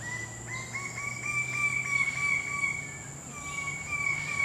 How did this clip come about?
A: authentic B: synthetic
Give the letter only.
A